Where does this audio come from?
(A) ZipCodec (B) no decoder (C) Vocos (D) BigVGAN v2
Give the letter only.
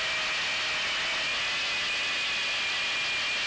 B